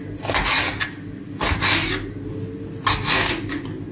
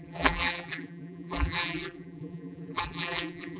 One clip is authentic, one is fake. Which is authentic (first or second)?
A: first